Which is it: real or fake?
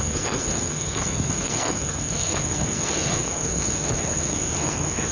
fake